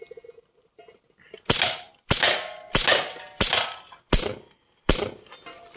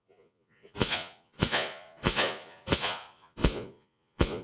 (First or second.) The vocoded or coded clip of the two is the second